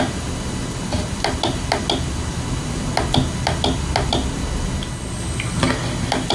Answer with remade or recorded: recorded